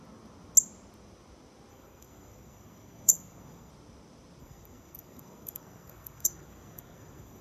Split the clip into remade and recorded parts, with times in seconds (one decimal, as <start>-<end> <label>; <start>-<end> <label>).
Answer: 0.0-1.7 recorded; 1.7-3.7 remade; 3.7-4.4 recorded; 4.4-7.4 remade